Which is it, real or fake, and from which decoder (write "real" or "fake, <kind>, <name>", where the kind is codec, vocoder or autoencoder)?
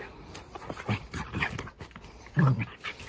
real